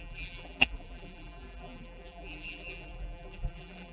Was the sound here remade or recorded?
remade